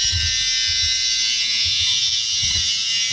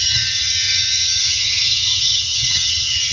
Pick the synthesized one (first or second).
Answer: second